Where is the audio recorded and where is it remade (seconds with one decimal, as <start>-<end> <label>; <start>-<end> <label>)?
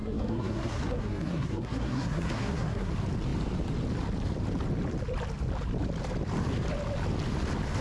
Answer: 0.0-2.9 remade; 2.9-7.8 recorded